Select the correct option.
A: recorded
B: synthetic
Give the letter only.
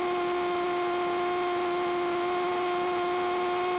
A